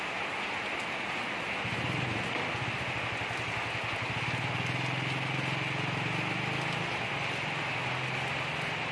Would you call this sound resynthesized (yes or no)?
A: no